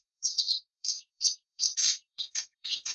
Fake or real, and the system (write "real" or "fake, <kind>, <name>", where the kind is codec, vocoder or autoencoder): fake, codec, SNAC